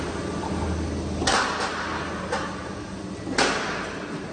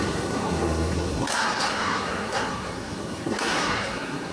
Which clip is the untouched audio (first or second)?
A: first